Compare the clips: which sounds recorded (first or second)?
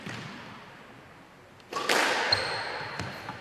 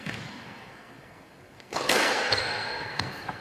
first